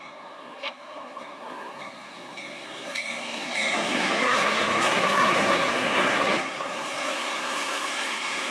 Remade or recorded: remade